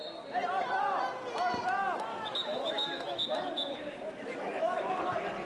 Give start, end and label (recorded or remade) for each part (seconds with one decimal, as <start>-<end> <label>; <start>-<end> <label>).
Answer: 0.0-2.1 recorded; 2.1-5.0 remade; 5.0-5.4 recorded